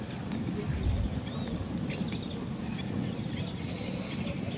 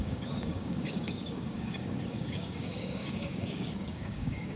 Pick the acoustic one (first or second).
first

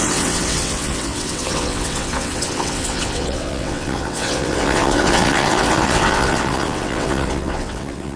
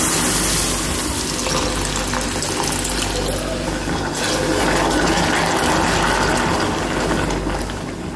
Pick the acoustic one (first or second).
second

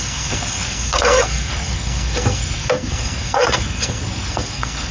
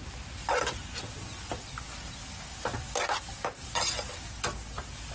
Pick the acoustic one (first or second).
second